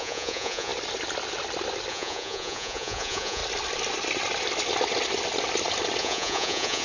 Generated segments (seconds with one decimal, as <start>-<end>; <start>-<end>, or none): 0.0-0.7; 1.9-3.4; 6.0-6.8